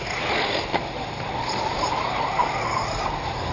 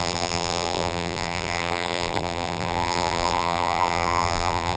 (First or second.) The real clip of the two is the first